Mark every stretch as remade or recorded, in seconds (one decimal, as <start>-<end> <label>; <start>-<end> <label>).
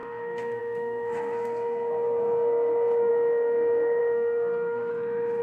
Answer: 0.0-4.9 remade; 4.9-5.4 recorded